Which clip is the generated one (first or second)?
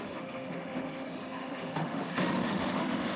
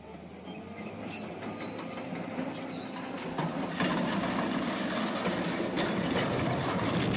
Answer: first